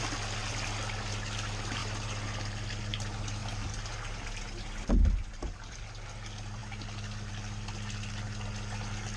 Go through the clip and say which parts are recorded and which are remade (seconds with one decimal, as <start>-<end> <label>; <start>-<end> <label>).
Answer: 0.0-9.2 recorded

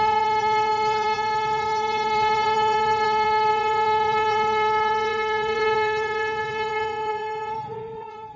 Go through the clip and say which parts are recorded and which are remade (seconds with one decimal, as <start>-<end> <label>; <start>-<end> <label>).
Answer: 0.0-8.4 remade

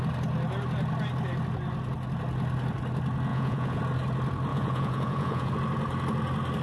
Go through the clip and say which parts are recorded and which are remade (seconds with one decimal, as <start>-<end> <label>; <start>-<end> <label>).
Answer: 0.0-3.3 recorded; 3.3-3.8 remade; 3.8-4.5 recorded; 4.5-5.5 remade; 5.5-6.6 recorded